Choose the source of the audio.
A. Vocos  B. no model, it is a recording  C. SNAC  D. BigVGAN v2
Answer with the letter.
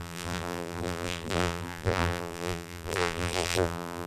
D